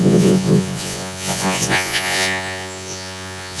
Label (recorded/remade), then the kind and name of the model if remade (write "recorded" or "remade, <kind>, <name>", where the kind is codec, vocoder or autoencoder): remade, vocoder, Vocos